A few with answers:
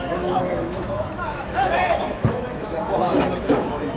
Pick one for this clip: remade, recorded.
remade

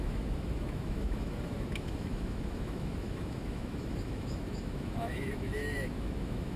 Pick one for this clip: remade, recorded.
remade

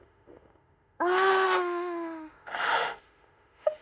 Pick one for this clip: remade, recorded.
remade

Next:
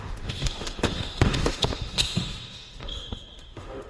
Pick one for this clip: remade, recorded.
remade